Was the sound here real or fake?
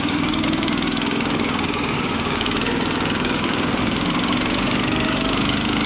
fake